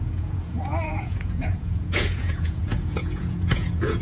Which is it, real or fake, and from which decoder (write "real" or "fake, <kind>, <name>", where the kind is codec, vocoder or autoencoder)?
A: fake, vocoder, Vocos